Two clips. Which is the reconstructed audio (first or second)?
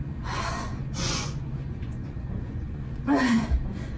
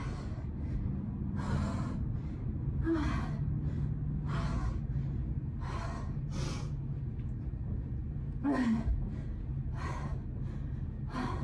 first